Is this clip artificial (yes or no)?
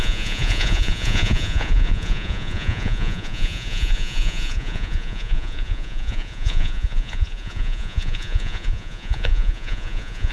yes